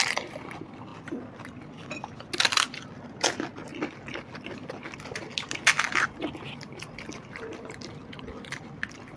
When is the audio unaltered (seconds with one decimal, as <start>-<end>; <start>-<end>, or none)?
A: 0.0-9.2